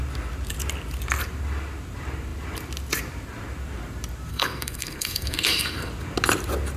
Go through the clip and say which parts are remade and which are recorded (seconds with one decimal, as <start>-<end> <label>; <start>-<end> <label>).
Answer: 0.0-4.3 recorded; 4.3-5.9 remade; 5.9-6.8 recorded